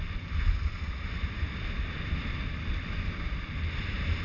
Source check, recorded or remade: recorded